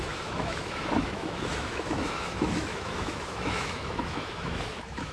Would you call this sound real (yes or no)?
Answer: no